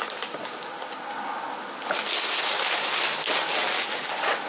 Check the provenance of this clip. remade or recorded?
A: recorded